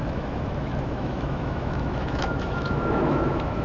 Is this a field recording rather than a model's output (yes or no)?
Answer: no